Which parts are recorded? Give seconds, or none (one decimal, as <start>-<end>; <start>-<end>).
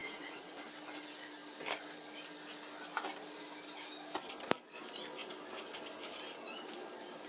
0.6-7.3